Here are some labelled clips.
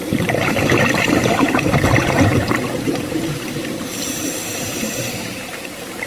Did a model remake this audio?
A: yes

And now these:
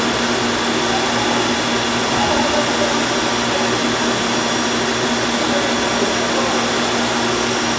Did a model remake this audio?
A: no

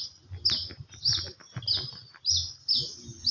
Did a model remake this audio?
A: no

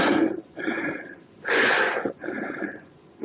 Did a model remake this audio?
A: yes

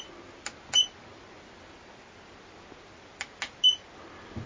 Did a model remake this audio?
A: no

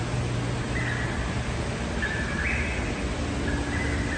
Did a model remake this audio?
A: no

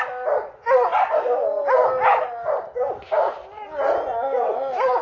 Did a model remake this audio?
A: no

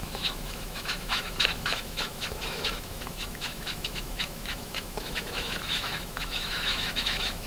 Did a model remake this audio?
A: yes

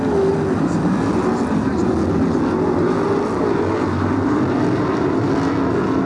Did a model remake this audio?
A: no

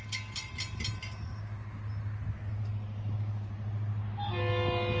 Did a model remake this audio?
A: no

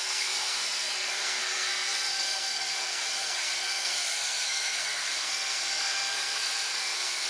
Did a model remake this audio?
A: yes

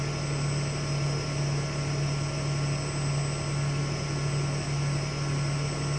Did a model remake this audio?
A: no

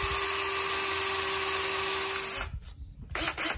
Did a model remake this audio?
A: no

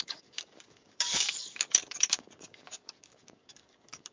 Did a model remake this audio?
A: yes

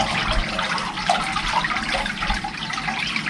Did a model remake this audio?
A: no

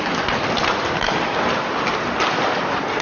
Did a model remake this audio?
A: yes